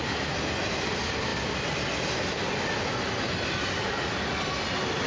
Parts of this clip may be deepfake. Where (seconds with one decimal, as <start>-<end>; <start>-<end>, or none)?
none